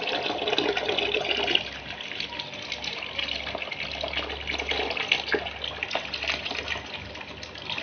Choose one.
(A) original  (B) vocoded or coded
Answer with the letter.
A